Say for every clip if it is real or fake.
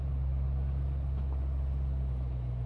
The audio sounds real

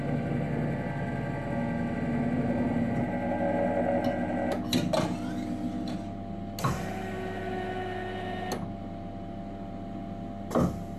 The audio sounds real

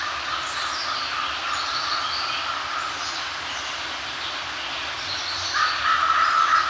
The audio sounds real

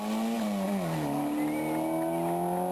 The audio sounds real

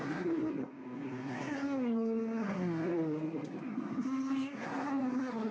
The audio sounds fake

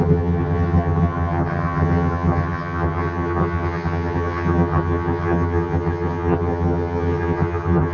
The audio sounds fake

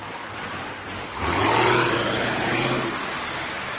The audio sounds fake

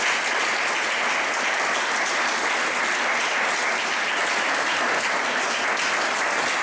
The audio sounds real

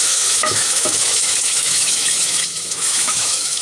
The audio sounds fake